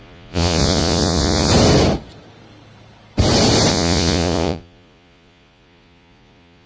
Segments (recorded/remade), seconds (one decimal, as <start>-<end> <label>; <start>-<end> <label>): 0.0-1.5 remade; 1.5-3.7 recorded; 3.7-6.7 remade